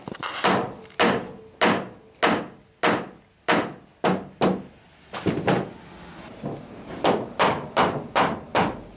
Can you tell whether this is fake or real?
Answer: real